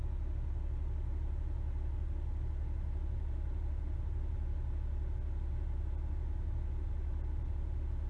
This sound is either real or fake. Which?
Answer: real